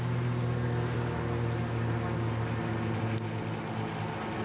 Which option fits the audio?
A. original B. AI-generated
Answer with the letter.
A